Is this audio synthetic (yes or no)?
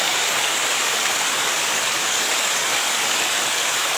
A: yes